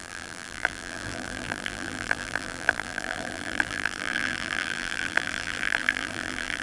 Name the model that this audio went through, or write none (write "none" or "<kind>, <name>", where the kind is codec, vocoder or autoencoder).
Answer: vocoder, BigVGAN v2